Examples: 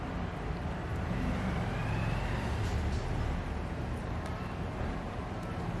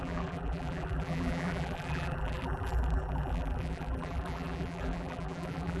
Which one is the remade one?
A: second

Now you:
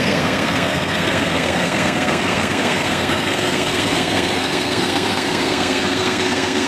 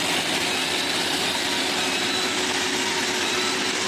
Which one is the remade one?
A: first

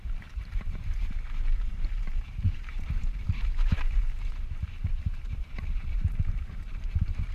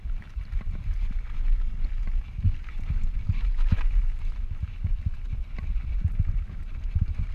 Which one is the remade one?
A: first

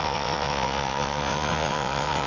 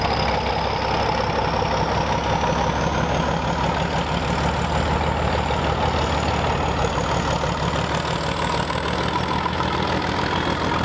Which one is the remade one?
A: first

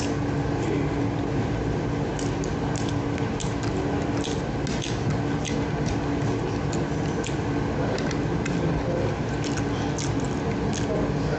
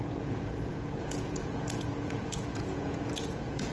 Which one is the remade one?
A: second